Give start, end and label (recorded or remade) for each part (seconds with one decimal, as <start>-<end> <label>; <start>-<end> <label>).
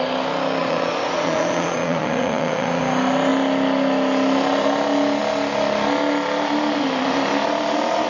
0.0-0.6 recorded; 0.6-2.8 remade; 2.8-8.1 recorded